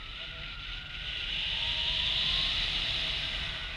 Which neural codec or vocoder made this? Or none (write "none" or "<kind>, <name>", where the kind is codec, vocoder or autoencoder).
none